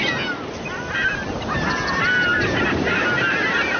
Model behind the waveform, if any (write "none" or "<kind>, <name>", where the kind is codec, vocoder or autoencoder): none